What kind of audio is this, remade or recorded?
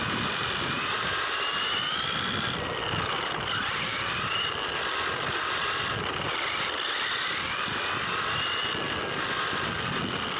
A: recorded